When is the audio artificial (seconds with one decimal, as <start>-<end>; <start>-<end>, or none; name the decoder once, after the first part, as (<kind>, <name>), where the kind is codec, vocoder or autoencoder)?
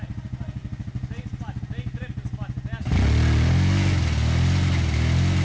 none